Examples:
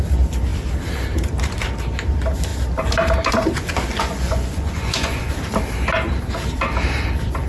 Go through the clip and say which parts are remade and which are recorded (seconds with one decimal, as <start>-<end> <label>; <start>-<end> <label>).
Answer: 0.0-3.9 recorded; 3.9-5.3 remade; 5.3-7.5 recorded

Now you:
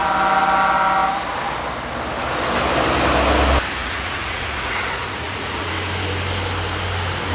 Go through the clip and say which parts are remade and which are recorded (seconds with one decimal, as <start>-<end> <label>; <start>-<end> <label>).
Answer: 0.0-3.8 recorded; 3.8-5.7 remade; 5.7-7.3 recorded

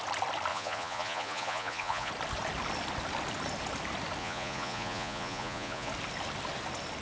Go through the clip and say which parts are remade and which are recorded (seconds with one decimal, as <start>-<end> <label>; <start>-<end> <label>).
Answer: 0.0-0.5 recorded; 0.5-2.1 remade; 2.1-4.2 recorded; 4.2-5.9 remade; 5.9-7.0 recorded

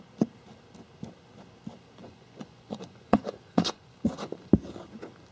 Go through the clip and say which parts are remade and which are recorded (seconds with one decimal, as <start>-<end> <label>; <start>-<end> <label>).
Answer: 0.0-2.0 recorded; 2.0-4.5 remade; 4.5-5.3 recorded

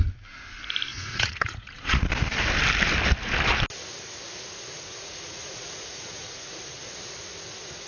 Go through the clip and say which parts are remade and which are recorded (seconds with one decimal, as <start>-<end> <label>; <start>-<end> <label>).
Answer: 0.0-0.9 recorded; 0.9-2.1 remade; 2.1-4.9 recorded; 4.9-6.8 remade; 6.8-7.9 recorded

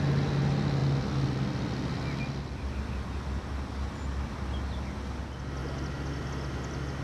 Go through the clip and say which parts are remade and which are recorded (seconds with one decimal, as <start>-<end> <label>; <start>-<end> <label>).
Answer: 0.0-7.0 recorded

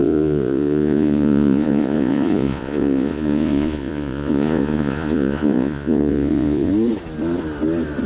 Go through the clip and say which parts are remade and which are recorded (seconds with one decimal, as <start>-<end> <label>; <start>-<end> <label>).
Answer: 0.0-6.7 remade; 6.7-8.1 recorded